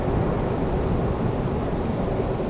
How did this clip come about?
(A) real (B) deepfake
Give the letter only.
A